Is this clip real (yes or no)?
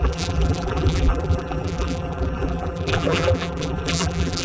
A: no